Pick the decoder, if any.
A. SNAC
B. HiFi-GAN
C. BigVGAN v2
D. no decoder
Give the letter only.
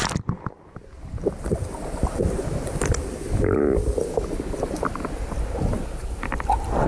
D